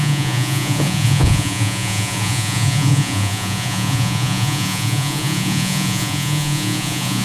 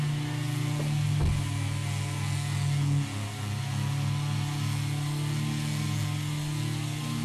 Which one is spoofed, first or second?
first